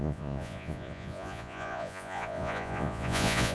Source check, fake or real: fake